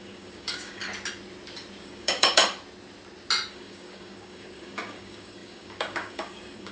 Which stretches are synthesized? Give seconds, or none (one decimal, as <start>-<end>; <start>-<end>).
0.0-0.8; 1.8-2.4; 3.5-6.7